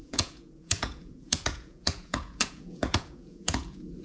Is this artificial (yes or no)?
yes